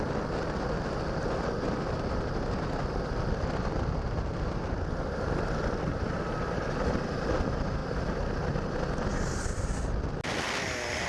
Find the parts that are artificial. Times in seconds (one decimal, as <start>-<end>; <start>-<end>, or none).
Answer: none